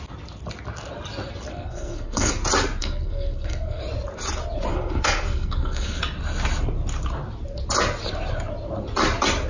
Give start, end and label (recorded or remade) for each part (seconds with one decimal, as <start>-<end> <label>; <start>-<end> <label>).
0.0-1.5 recorded; 1.5-2.3 remade; 2.3-2.8 recorded; 2.8-3.8 remade; 3.8-4.7 recorded; 4.7-6.0 remade; 6.0-9.5 recorded